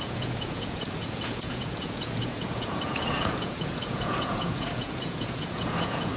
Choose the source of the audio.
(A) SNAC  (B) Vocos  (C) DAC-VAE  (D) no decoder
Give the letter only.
B